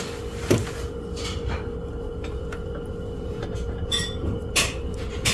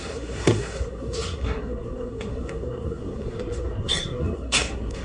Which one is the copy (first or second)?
second